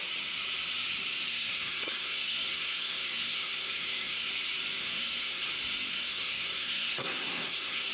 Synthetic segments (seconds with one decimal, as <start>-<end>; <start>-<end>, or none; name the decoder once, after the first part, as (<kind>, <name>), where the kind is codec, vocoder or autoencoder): 1.3-4.3 (codec, SNAC); 4.8-5.5; 5.9-7.9

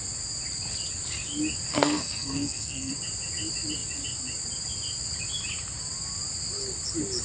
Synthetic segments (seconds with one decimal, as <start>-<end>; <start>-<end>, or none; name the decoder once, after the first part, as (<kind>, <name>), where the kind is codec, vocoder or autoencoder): 1.7-2.9 (codec, SNAC)

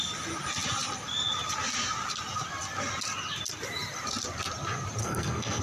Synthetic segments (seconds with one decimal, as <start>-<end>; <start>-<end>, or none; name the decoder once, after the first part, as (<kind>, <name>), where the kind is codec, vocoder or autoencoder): 5.0-5.6 (codec, SNAC)

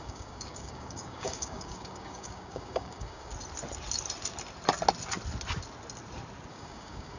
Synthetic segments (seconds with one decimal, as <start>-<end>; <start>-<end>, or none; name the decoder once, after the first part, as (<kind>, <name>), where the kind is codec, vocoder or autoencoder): 0.0-3.3 (codec, DAC); 6.5-7.2